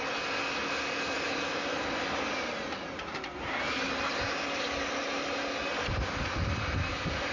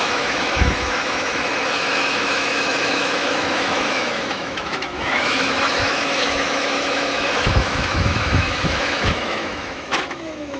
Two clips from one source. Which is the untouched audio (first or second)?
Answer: first